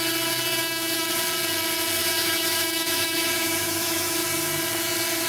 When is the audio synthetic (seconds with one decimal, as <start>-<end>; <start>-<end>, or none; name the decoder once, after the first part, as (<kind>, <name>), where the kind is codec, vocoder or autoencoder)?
0.5-1.1 (autoencoder, DAC-VAE); 2.0-4.2